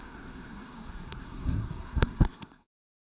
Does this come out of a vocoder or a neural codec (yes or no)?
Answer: yes